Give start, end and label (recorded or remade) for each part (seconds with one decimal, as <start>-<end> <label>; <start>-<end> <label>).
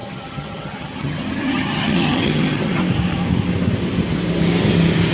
0.0-2.8 remade; 2.8-5.1 recorded